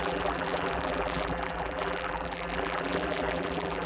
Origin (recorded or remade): remade